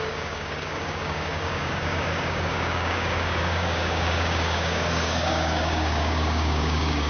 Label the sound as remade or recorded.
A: remade